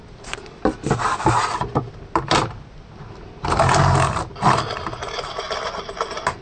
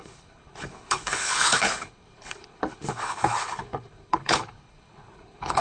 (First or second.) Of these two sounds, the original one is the first